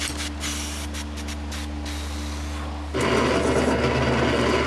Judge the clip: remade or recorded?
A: recorded